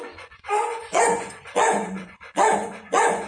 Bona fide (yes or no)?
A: no